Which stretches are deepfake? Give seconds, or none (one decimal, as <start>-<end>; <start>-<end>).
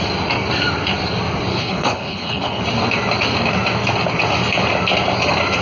1.5-2.6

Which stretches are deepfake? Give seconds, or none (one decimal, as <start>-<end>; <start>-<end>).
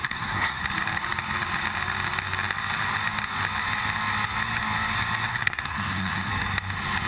0.0-0.6; 5.3-6.3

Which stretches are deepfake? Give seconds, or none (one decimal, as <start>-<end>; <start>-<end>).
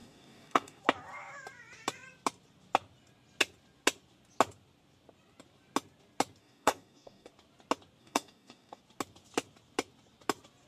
0.0-0.8; 6.4-7.3; 8.0-8.8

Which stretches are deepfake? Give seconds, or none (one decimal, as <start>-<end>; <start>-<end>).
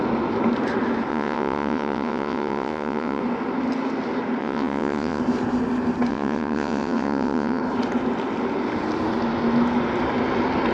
1.1-3.2; 4.4-5.2; 6.1-7.6